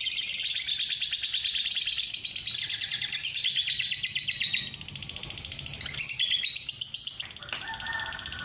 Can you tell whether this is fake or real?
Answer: real